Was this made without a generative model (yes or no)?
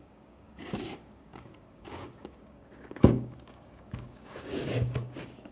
no